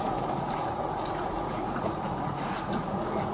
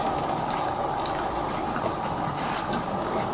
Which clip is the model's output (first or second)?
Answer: first